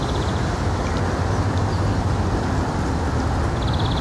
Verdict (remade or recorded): recorded